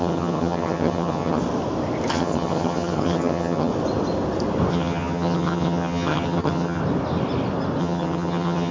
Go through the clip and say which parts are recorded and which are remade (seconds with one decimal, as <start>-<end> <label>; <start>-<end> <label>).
0.0-1.4 remade; 1.4-2.1 recorded; 2.1-3.7 remade; 3.7-4.7 recorded; 4.7-6.8 remade; 6.8-7.8 recorded; 7.8-8.7 remade